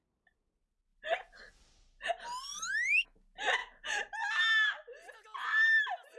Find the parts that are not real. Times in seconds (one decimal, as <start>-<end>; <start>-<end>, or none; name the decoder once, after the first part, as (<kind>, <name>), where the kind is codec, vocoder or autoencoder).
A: 3.6-4.4 (vocoder, BigVGAN v2)

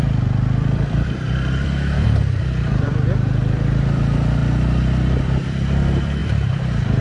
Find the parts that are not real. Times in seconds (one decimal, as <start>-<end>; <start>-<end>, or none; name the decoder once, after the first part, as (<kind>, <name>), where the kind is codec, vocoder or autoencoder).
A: 0.0-4.4 (vocoder, BigVGAN v2); 5.2-7.0

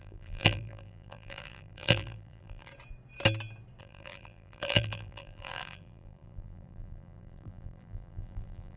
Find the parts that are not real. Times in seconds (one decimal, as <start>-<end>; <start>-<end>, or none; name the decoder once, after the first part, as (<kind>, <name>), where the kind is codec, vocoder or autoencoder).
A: 0.0-2.7 (vocoder, BigVGAN v2); 3.8-8.8